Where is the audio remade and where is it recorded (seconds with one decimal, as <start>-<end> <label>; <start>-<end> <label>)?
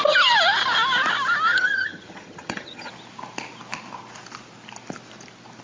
0.0-1.5 recorded; 1.5-2.9 remade; 2.9-5.6 recorded